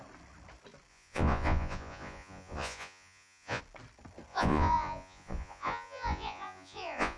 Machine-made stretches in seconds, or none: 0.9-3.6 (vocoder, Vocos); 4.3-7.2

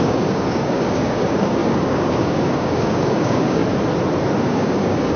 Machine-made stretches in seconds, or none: 0.0-3.6 (codec, DAC); 4.4-5.2